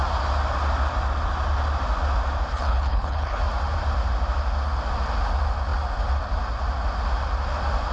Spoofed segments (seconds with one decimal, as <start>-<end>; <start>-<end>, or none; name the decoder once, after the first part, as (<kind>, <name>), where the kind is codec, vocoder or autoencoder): 2.5-3.4 (codec, HILCodec)